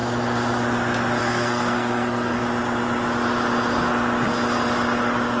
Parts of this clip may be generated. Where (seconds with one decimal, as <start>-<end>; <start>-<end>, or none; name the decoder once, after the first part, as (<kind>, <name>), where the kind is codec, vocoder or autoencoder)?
1.2-2.4 (codec, SNAC)